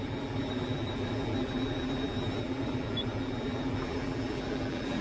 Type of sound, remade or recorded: remade